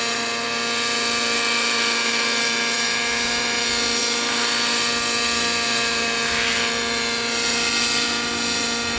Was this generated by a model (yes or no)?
no